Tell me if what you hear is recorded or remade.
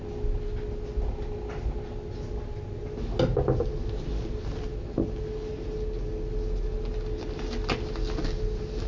recorded